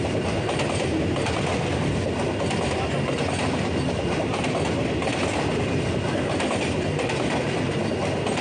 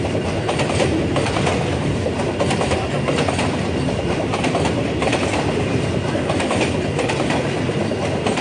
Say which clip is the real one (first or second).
first